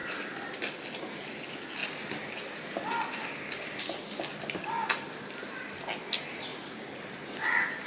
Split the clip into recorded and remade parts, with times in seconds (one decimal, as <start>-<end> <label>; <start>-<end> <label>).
0.0-0.6 remade; 0.6-6.5 recorded; 6.5-7.9 remade